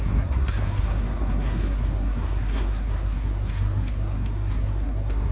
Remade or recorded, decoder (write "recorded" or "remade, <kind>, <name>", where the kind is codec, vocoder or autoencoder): remade, codec, SNAC